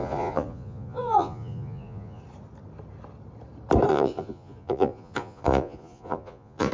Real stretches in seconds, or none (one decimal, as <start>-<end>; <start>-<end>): 2.2-3.9